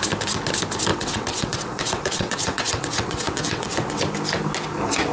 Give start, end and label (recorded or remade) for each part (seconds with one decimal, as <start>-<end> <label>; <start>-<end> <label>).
0.0-0.9 recorded; 0.9-4.0 remade; 4.0-5.1 recorded